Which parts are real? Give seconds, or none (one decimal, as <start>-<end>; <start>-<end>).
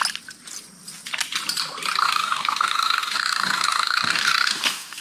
0.0-2.0